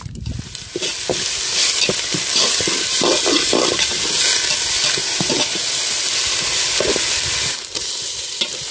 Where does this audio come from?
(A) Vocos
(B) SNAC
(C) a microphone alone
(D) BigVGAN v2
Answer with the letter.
C